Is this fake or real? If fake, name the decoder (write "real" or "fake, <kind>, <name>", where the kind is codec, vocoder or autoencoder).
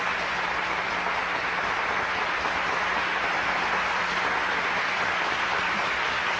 real